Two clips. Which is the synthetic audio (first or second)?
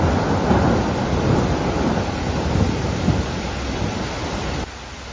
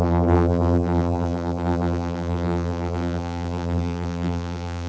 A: second